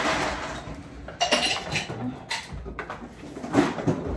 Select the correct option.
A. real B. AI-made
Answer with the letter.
A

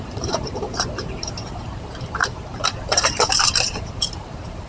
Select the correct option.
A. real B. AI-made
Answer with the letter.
B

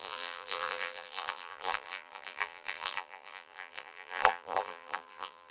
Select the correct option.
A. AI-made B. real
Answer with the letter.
A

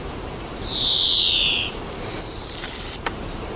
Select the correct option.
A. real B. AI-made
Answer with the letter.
B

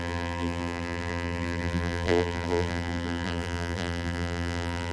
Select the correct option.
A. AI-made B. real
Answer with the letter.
A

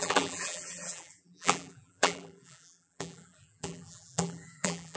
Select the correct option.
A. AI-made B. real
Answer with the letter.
A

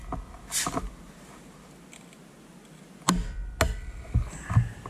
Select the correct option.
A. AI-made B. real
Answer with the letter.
B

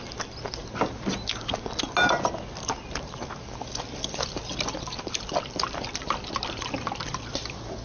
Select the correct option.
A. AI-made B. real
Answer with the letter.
B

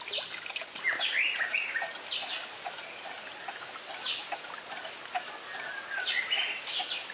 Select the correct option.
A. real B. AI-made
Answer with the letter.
A